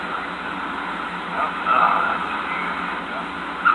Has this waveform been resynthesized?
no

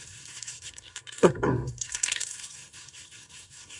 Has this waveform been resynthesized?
yes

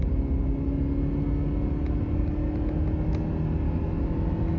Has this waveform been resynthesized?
no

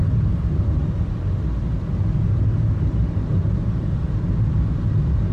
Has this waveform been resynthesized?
no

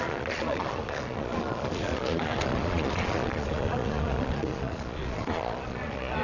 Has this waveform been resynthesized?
yes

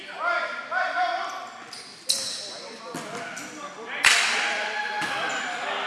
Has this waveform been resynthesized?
no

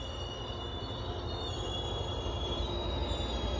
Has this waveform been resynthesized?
no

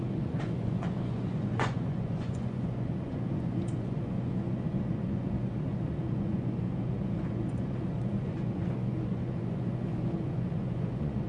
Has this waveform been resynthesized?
yes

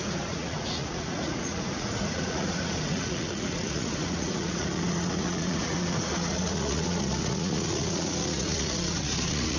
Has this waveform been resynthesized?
yes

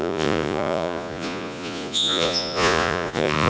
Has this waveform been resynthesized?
yes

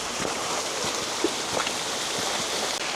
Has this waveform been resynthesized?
no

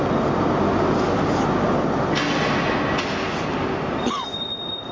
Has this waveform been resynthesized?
no